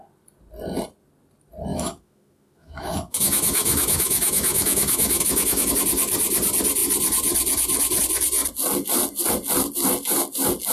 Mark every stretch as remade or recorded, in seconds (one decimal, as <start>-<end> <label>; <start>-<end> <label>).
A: 0.0-1.7 recorded; 1.7-5.7 remade; 5.7-10.7 recorded